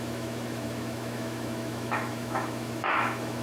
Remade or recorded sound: remade